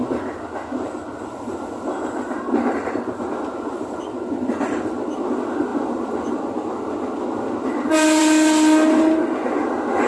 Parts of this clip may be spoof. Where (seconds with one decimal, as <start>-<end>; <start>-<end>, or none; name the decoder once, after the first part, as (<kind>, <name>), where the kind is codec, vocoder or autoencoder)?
none